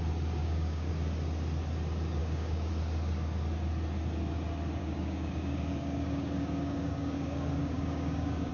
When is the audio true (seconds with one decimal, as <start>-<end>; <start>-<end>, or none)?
0.0-0.4; 0.9-2.2; 2.7-4.8